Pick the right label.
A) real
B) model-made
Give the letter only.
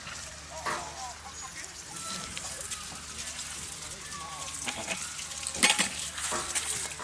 A